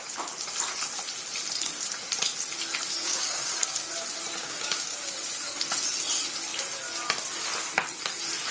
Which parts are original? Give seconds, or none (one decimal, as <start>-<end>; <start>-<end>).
0.0-3.0; 3.8-4.4; 5.1-8.5